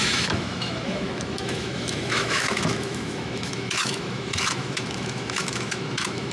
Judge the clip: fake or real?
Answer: fake